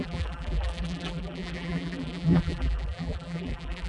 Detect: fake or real fake